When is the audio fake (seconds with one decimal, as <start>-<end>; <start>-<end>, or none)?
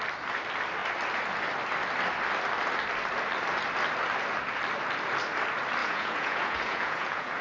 5.8-7.4